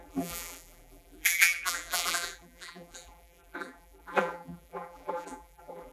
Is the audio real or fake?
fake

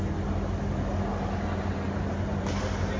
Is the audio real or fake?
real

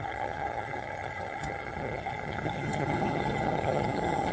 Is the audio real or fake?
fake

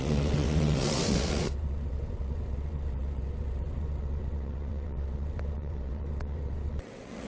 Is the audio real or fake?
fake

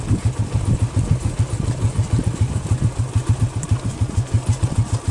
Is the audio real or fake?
real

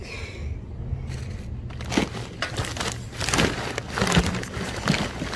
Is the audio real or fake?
real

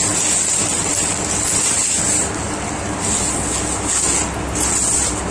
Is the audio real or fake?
real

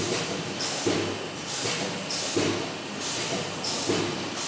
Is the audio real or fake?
real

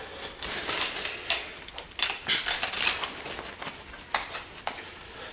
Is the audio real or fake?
real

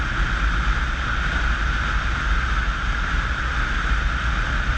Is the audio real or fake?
real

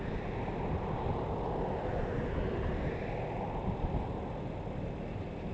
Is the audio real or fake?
real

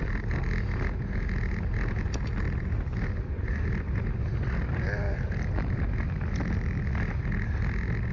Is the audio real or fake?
real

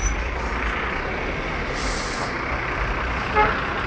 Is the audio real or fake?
real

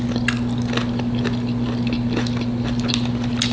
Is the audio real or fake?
real